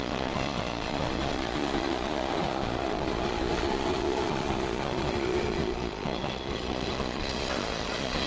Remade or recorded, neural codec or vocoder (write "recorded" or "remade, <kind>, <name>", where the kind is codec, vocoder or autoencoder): remade, vocoder, Vocos